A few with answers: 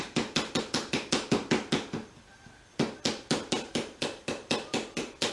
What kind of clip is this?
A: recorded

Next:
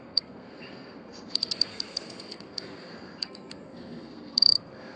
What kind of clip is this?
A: remade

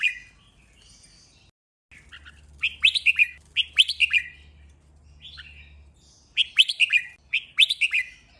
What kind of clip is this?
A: recorded